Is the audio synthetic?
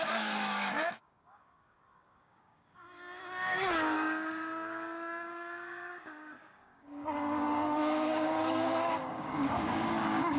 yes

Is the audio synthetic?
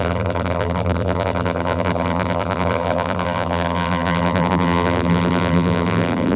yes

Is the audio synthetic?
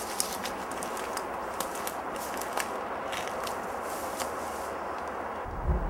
no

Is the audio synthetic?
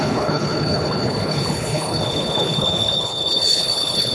yes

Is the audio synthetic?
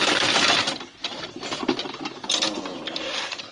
no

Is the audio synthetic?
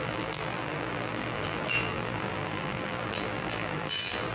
yes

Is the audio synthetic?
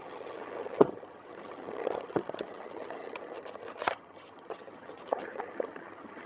yes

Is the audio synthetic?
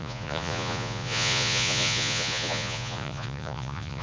yes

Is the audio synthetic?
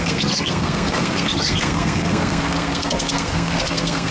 yes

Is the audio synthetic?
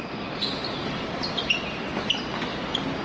no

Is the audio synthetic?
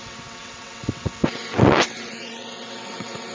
yes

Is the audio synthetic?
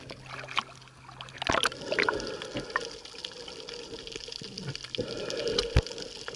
no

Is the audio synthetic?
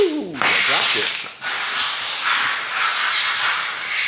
no